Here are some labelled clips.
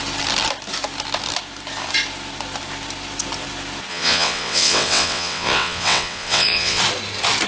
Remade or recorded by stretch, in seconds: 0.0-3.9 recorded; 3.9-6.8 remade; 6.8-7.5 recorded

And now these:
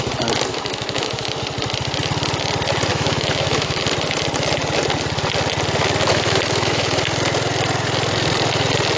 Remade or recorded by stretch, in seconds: 0.0-0.5 recorded; 0.5-1.4 remade; 1.4-2.9 recorded; 2.9-3.8 remade; 3.8-6.1 recorded; 6.1-7.2 remade; 7.2-9.0 recorded

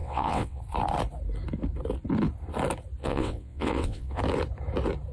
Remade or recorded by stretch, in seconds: 0.0-0.6 remade; 0.6-3.0 recorded; 3.0-4.2 remade; 4.2-5.1 recorded

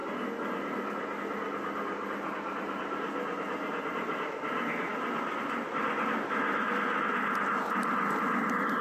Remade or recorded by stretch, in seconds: 0.0-8.8 recorded

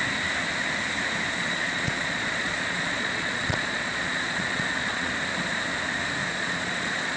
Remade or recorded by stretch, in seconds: 0.0-1.4 recorded; 1.4-5.1 remade; 5.1-6.2 recorded; 6.2-7.2 remade